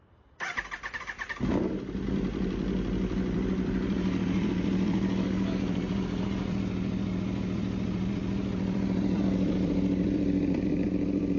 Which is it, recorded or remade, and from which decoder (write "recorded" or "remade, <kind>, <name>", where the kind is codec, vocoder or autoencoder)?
remade, vocoder, BigVGAN v2